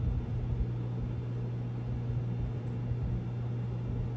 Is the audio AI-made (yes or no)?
no